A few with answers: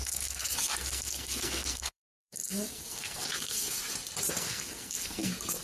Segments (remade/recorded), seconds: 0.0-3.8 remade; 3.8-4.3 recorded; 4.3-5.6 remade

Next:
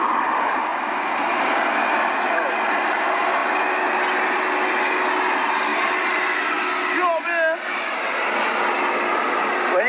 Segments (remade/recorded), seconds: 0.0-9.9 recorded

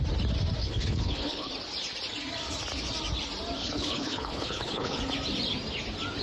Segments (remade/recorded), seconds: 0.0-0.6 recorded; 0.6-1.5 remade; 1.5-3.6 recorded; 3.6-5.0 remade; 5.0-6.2 recorded

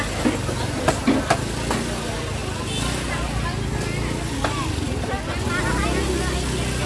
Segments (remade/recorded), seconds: 0.0-6.9 recorded

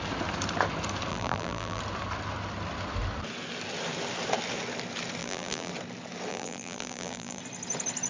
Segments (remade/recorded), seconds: 0.0-1.1 recorded; 1.1-1.8 remade; 1.8-5.2 recorded; 5.2-5.7 remade; 5.7-6.3 recorded; 6.3-7.4 remade; 7.4-8.1 recorded